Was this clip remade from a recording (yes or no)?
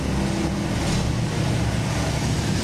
no